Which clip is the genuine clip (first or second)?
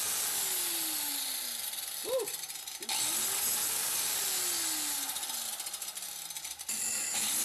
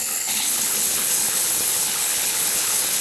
first